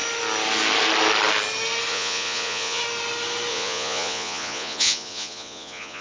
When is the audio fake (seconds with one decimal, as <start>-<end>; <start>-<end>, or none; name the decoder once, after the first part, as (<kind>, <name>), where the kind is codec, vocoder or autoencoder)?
1.9-2.8 (vocoder, Vocos); 3.5-6.0